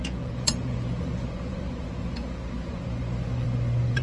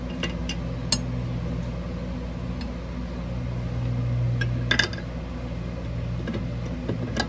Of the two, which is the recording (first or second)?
second